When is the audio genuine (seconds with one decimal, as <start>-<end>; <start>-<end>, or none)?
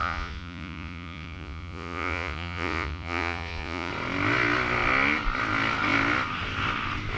3.9-7.2